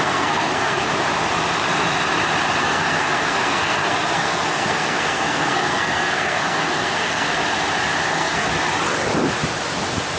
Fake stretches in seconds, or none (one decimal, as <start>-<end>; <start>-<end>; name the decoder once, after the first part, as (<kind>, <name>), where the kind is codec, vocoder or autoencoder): 0.0-0.9 (codec, SNAC); 2.6-7.4; 8.1-8.5